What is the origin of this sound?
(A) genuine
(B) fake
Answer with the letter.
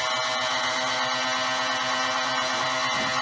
A